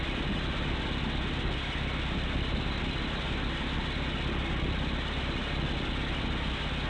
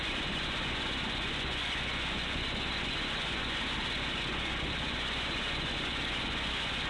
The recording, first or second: first